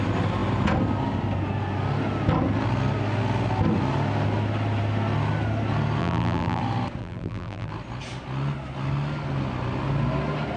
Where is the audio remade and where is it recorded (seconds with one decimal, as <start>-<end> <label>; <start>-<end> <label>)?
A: 0.0-6.0 recorded; 6.0-6.6 remade; 6.6-7.0 recorded; 7.0-7.7 remade; 7.7-10.6 recorded